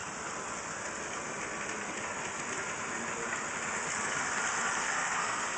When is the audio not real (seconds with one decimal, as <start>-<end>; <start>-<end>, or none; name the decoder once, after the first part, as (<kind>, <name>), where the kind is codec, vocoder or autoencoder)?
4.8-5.6 (codec, SNAC)